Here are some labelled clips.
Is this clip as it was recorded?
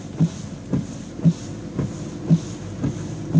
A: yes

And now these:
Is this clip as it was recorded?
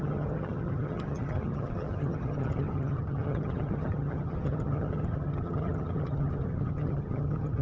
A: no